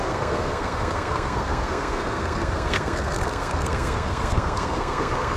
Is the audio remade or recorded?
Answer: remade